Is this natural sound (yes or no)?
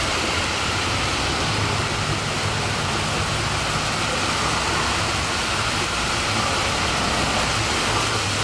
yes